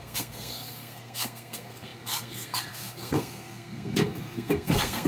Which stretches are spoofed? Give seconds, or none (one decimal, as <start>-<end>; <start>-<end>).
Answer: 0.0-5.1